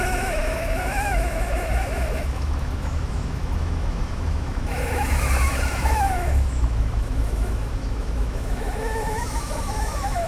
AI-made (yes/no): yes